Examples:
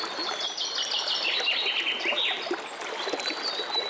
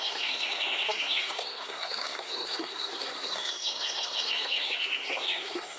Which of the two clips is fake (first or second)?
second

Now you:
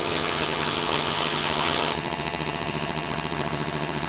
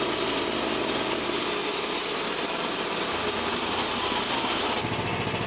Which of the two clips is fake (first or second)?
first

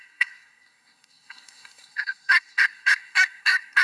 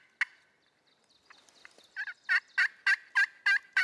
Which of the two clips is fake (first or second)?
first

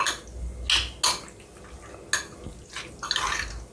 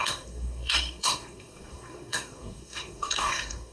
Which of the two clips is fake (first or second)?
second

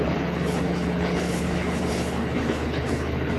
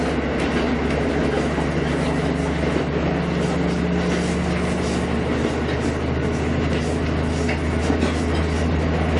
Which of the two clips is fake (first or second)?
first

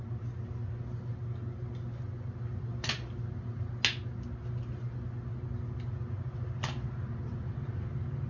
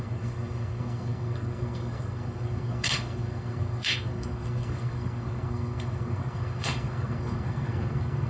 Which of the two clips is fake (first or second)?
second